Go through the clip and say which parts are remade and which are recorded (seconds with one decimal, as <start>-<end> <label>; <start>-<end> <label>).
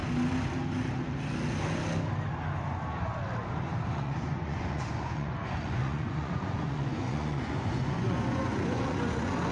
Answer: 0.0-3.9 recorded; 3.9-9.5 remade